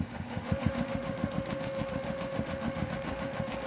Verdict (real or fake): fake